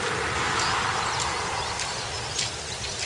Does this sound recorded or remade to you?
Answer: recorded